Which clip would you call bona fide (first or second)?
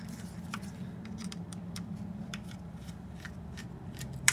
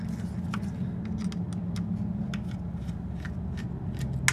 second